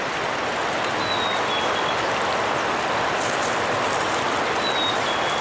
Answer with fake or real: real